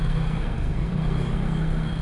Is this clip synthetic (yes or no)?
yes